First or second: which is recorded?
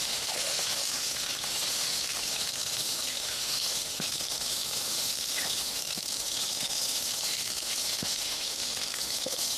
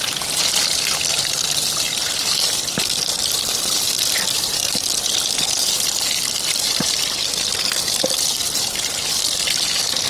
second